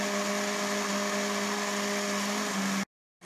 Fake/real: real